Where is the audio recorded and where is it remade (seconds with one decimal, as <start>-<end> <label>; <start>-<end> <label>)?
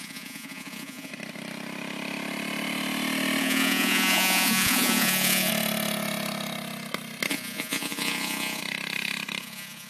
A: 0.0-1.1 remade; 1.1-3.4 recorded; 3.4-5.5 remade; 5.5-7.3 recorded; 7.3-8.6 remade; 8.6-9.4 recorded; 9.4-9.9 remade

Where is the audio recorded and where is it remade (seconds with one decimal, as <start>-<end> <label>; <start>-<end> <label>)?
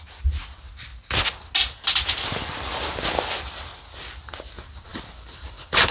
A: 0.0-5.9 recorded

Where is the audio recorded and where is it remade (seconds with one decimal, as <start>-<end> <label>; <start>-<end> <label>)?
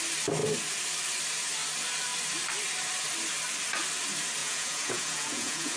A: 0.0-4.4 recorded; 4.4-5.8 remade